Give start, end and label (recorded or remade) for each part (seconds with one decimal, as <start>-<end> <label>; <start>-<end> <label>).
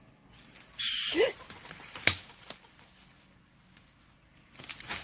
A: 0.0-5.0 recorded